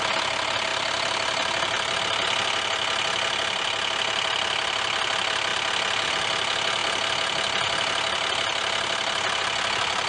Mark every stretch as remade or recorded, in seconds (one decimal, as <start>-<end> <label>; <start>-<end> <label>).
0.0-10.1 recorded